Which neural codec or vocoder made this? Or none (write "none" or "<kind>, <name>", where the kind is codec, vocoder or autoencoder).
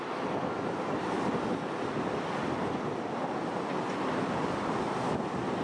none